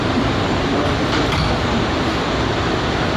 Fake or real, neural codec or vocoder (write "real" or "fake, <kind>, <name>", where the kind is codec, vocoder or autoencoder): real